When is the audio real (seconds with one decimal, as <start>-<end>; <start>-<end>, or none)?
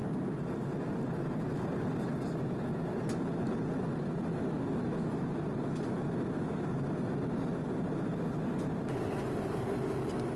0.0-10.4